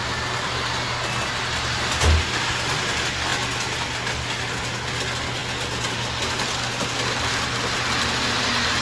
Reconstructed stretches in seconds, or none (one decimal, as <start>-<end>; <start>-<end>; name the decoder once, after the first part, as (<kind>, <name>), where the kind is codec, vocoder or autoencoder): none